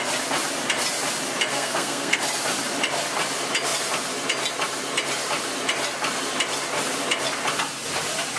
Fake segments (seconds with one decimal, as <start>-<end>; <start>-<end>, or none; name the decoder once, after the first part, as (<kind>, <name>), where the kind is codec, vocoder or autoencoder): 1.5-2.2 (codec, SNAC)

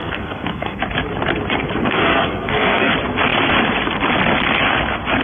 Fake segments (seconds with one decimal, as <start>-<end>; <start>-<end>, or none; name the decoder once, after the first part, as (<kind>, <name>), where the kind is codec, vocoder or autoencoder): 0.0-0.8 (codec, SNAC); 1.8-2.9